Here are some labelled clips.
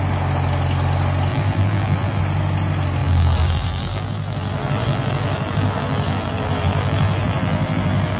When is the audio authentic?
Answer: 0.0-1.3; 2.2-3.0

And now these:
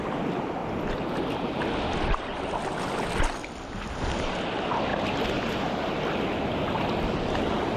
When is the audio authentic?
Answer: 0.0-0.6; 3.2-4.9; 5.9-7.8